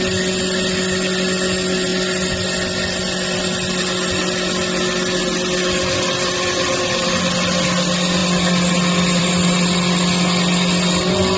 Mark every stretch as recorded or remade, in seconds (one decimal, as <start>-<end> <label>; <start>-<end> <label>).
0.0-11.4 recorded